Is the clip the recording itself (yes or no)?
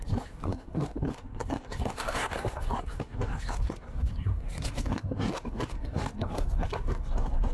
no